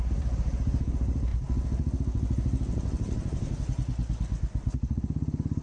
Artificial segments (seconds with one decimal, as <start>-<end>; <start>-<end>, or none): 0.0-1.3; 4.7-5.6